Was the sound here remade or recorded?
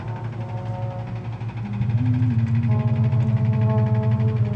recorded